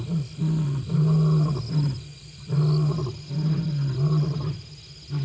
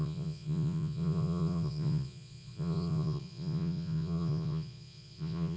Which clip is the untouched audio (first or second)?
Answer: first